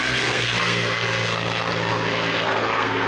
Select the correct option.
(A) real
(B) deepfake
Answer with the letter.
B